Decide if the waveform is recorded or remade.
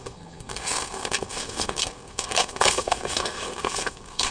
remade